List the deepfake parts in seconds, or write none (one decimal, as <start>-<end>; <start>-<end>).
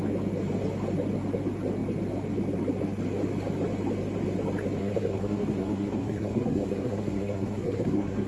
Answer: 4.8-8.3